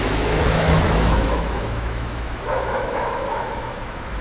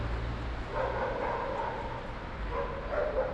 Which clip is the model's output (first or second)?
first